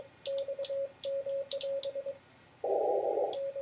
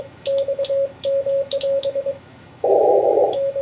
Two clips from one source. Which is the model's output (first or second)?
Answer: second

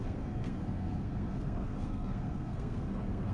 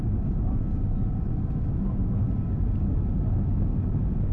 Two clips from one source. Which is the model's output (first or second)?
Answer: first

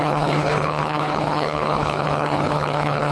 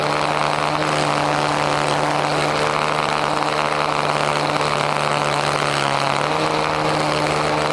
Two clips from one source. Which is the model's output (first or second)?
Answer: first